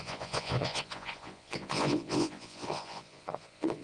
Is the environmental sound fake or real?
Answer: fake